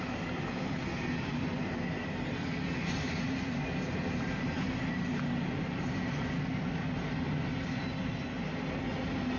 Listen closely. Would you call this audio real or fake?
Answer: real